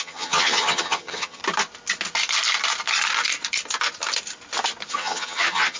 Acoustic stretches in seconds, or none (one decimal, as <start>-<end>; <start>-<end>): 1.4-4.9